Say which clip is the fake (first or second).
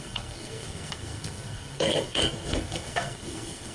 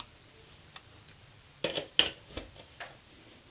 first